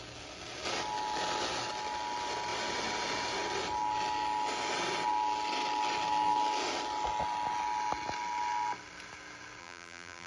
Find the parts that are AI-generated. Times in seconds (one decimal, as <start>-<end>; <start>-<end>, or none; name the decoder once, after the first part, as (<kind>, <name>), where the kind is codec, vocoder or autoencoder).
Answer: 9.6-10.3 (vocoder, BigVGAN v2)